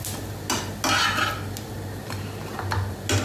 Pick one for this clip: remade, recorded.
recorded